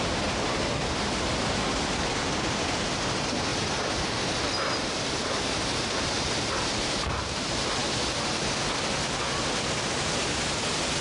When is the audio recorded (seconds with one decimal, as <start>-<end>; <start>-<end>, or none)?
0.0-11.0